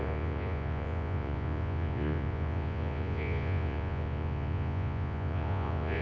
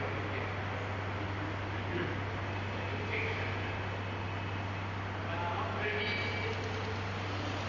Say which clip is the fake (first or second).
first